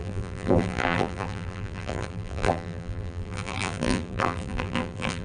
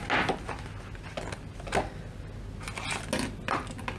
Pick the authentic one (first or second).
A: second